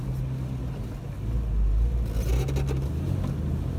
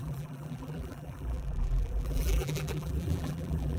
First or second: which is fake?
second